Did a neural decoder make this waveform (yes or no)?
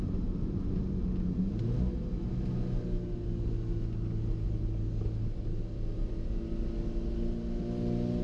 no